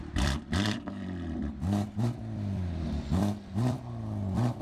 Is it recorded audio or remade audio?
remade